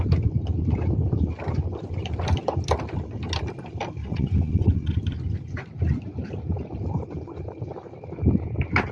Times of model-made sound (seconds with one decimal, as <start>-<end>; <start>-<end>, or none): 4.0-5.0